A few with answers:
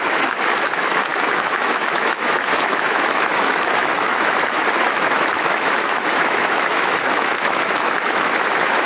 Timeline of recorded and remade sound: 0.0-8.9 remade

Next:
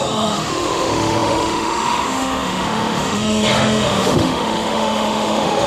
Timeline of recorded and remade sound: 0.0-5.7 remade

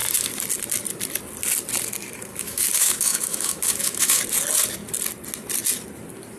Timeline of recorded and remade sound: 0.0-2.3 recorded; 2.3-4.2 remade; 4.2-6.4 recorded

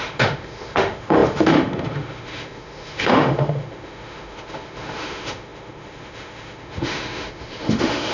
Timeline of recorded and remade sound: 0.0-8.1 remade

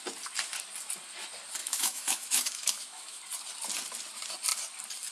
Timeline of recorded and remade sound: 0.0-1.6 recorded; 1.6-3.2 remade; 3.2-5.1 recorded

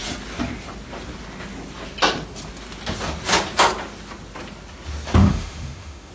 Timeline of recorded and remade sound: 0.0-5.2 recorded; 5.2-6.1 remade